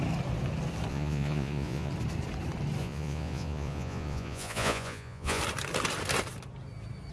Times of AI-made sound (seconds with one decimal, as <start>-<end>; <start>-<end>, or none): 0.9-1.9; 2.8-5.4